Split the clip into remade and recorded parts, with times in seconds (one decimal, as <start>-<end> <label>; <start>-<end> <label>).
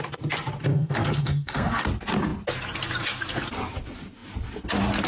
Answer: 0.0-0.7 recorded; 0.7-1.8 remade; 1.8-5.1 recorded